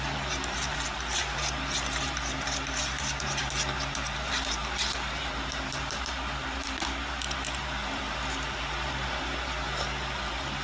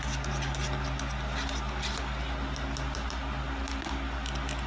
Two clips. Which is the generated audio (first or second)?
first